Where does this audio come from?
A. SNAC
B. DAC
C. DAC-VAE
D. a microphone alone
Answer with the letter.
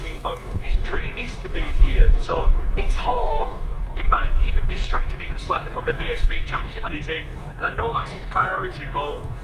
B